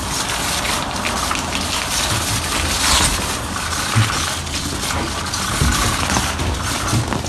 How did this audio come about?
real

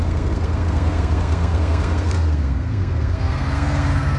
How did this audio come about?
fake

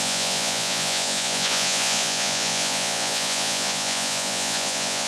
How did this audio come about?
fake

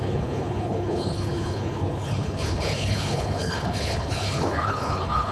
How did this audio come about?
fake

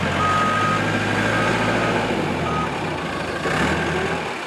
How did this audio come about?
real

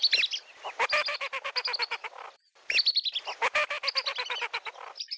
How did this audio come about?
real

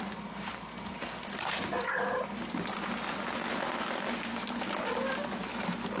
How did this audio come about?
real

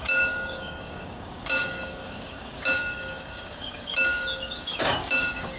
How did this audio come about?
fake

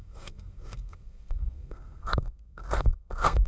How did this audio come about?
fake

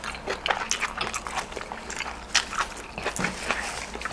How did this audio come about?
real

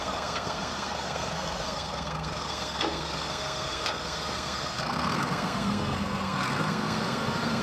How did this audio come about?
fake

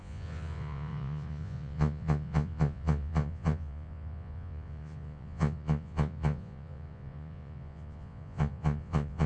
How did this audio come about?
fake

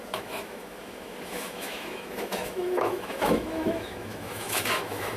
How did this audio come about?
fake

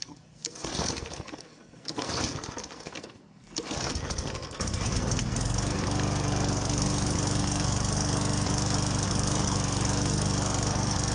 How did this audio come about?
fake